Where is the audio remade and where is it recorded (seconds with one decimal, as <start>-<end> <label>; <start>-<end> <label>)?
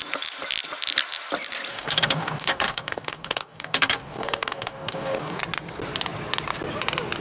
0.0-1.7 recorded; 1.7-5.4 remade; 5.4-7.2 recorded